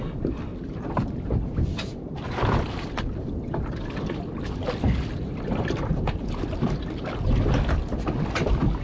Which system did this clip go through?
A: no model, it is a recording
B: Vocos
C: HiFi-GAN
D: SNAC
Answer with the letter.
A